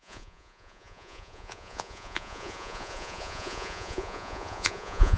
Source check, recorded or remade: remade